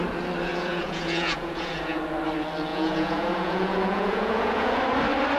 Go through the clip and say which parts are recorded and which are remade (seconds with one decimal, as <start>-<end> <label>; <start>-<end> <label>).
0.0-0.5 recorded; 0.5-2.0 remade; 2.0-2.7 recorded; 2.7-4.8 remade; 4.8-5.4 recorded